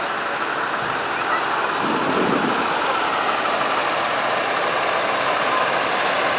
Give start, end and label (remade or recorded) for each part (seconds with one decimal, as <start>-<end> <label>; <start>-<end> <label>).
0.0-6.4 recorded